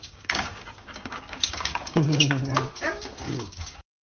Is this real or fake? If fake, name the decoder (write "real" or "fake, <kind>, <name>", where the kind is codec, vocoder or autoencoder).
fake, codec, DAC